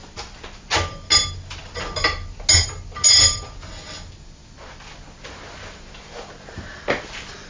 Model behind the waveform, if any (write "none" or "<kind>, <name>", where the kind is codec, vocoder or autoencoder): none